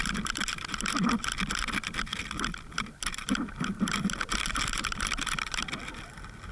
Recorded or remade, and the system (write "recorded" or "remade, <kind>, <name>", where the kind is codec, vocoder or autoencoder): remade, vocoder, BigVGAN v2